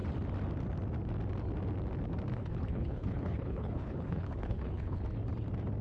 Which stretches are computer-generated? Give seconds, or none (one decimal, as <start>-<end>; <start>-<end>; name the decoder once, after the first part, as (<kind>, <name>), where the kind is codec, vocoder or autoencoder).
2.3-5.0 (codec, HILCodec)

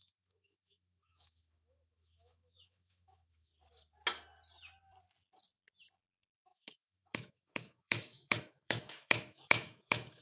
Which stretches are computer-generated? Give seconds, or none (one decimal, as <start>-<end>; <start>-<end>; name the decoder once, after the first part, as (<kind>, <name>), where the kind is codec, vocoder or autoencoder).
0.0-3.5 (autoencoder, DAC-VAE); 6.3-10.2

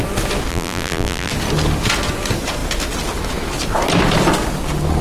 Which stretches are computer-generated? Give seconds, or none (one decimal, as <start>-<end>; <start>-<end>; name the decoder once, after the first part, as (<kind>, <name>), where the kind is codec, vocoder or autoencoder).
0.5-1.3 (vocoder, BigVGAN v2)

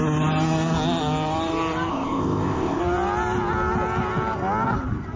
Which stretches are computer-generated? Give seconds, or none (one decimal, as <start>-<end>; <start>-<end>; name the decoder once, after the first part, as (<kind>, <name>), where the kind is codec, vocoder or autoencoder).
1.9-2.8 (codec, ZipCodec)

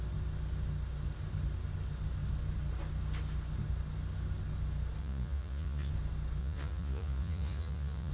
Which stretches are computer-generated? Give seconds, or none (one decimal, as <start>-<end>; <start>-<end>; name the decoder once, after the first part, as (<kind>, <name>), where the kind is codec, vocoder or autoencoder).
5.0-5.9 (vocoder, Vocos); 6.4-8.1

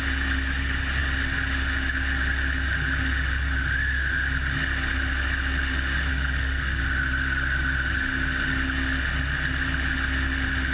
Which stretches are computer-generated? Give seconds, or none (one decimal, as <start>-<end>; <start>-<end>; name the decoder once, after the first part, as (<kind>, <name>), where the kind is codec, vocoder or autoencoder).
6.1-6.8 (codec, SNAC)

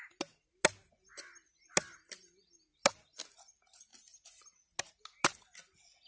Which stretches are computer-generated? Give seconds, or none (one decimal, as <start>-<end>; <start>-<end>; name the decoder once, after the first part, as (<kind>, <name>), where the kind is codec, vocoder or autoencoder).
none

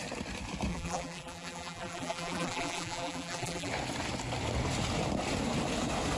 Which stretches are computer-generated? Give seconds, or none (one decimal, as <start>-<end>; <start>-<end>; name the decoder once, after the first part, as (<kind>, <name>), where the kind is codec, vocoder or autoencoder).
0.7-3.7 (vocoder, BigVGAN v2)